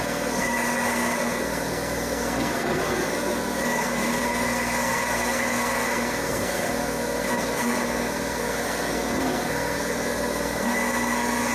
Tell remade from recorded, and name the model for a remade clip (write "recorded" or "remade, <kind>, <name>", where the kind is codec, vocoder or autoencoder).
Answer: remade, codec, SNAC